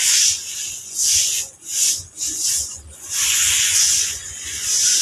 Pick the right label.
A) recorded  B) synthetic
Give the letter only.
B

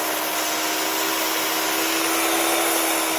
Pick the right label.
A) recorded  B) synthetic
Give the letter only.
A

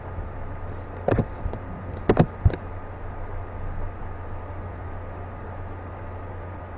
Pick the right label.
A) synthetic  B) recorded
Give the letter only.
B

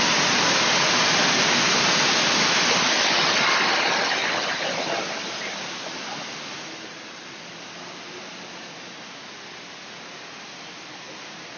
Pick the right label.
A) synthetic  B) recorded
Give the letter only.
B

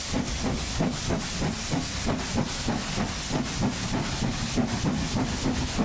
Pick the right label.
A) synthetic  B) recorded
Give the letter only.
B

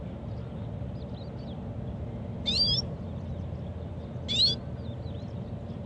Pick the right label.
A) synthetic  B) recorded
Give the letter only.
B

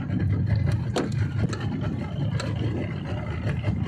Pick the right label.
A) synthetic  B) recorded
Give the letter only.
B